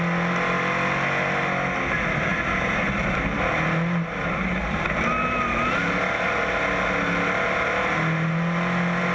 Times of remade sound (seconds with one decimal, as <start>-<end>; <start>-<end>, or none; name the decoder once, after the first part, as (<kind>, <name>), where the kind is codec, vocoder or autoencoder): none